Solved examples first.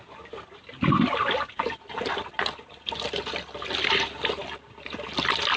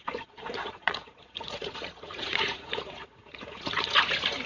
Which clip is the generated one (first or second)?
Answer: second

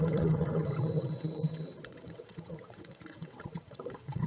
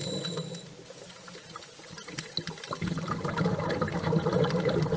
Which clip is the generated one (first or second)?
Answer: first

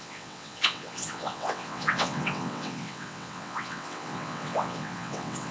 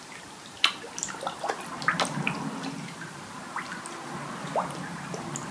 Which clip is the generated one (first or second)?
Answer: first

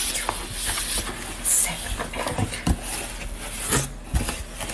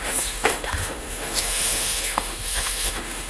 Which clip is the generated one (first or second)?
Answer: second